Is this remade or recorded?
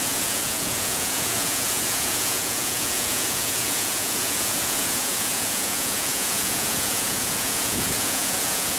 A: remade